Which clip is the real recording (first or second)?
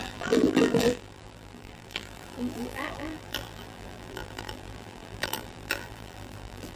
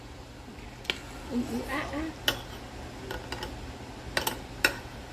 second